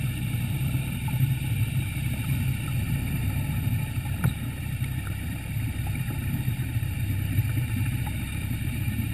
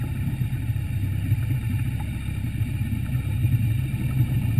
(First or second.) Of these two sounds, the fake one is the first